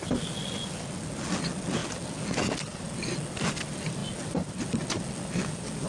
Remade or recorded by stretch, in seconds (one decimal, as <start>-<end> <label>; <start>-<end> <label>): 0.0-5.9 recorded